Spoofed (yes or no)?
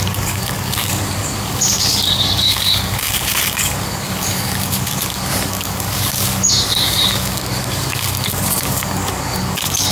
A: yes